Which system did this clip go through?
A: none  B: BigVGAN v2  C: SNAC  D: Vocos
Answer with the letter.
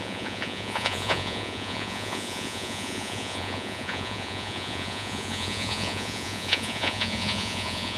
D